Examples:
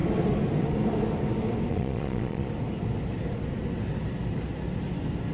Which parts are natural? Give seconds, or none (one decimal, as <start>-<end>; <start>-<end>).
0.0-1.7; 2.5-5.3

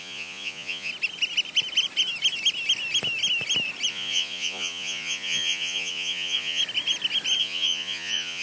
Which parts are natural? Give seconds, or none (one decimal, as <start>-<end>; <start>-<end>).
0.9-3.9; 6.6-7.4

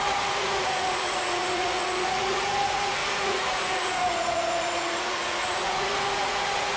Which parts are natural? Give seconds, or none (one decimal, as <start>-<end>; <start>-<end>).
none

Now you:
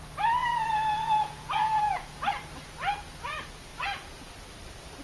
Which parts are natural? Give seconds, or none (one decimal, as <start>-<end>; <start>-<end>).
0.0-0.4; 2.3-3.7; 4.3-5.0

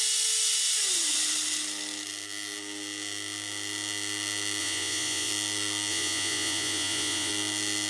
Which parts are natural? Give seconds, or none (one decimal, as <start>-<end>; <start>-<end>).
0.0-4.6; 5.3-5.9; 7.3-7.9